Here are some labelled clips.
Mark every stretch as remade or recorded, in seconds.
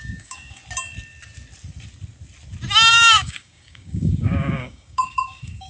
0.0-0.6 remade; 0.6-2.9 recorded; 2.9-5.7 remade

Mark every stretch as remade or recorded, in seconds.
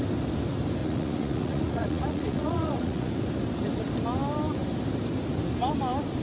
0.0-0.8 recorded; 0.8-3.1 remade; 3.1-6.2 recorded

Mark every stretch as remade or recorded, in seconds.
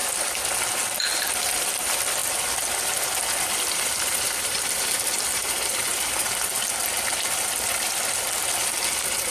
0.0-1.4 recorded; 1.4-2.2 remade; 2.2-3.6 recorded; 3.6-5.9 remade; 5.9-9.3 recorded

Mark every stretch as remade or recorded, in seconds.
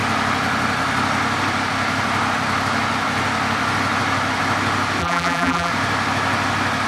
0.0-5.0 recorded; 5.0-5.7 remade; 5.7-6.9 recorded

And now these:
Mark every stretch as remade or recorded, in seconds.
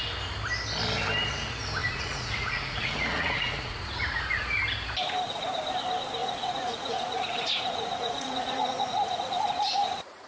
0.0-1.8 recorded; 1.8-4.6 remade; 4.6-6.2 recorded; 6.2-10.3 remade